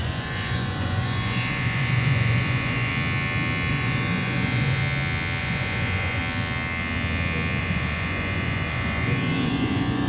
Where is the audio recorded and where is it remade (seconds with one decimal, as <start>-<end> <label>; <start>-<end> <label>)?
0.0-2.9 remade; 2.9-3.7 recorded; 3.7-4.8 remade; 4.8-5.4 recorded; 5.4-6.2 remade; 6.2-7.6 recorded; 7.6-10.1 remade